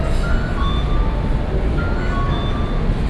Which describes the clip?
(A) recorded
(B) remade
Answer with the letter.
A